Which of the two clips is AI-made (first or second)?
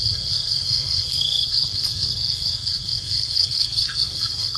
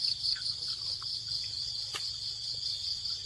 first